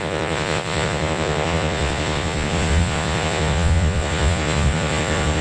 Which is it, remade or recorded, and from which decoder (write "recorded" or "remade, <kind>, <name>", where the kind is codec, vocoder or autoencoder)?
remade, vocoder, Vocos